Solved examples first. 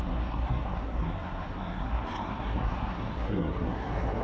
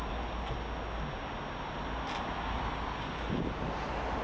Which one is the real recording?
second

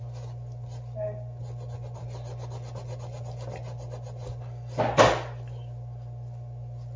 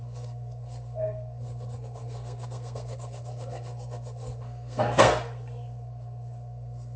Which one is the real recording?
first